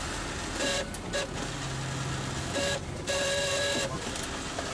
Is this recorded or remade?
remade